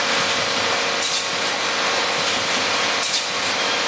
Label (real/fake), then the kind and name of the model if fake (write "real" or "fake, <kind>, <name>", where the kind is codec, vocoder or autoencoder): real